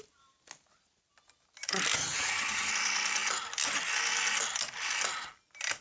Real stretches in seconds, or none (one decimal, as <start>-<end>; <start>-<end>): 0.0-2.0; 2.7-5.8